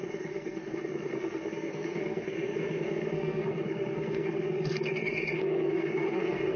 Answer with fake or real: fake